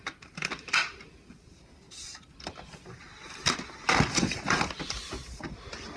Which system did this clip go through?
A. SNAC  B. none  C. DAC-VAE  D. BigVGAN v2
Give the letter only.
B